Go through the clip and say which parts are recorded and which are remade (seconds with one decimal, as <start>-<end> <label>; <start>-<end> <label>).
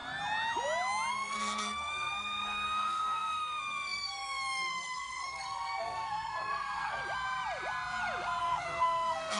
0.0-1.1 recorded; 1.1-7.0 remade; 7.0-8.4 recorded; 8.4-9.4 remade